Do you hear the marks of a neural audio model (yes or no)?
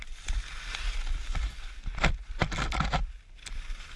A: no